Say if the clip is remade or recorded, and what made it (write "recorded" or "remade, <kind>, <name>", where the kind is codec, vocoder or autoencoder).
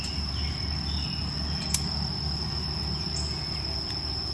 recorded